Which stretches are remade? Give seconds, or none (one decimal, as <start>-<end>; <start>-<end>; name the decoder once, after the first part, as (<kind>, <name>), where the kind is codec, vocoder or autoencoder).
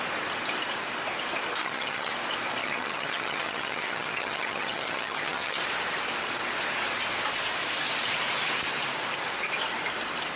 1.6-2.1 (vocoder, HiFi-GAN); 2.6-5.6